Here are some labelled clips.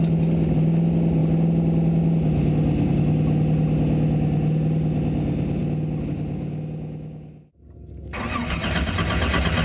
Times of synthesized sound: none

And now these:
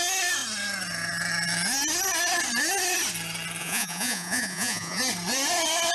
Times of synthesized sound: 3.6-5.0 (vocoder, Vocos)

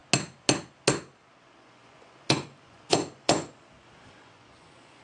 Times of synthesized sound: 1.4-5.0 (vocoder, Vocos)

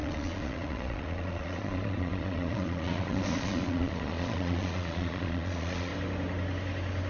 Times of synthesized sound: 0.0-5.9 (vocoder, Vocos)

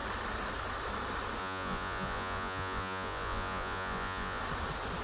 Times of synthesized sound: 1.4-4.4 (vocoder, Vocos)